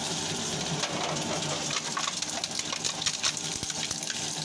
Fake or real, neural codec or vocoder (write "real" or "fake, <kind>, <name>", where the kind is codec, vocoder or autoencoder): real